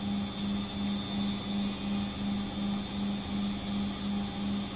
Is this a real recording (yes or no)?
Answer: yes